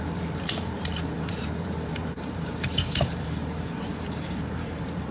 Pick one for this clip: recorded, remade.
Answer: remade